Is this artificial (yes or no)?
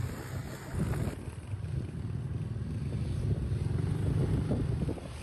no